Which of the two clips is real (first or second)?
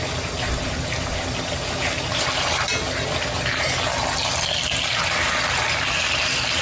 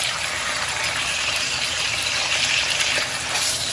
first